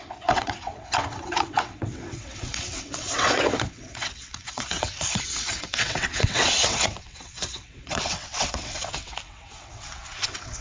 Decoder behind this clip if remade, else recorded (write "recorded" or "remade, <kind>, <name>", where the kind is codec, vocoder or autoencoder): remade, vocoder, WaveNeXt